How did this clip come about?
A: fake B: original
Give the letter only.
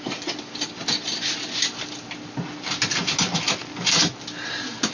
B